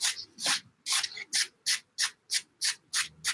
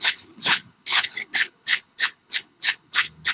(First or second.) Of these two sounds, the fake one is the second